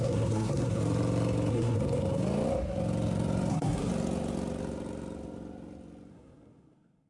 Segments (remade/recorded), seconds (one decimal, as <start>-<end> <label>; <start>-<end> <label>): 0.0-0.8 remade; 0.8-1.5 recorded; 1.5-2.2 remade; 2.2-3.5 recorded; 3.5-3.9 remade; 3.9-6.1 recorded; 6.1-7.1 remade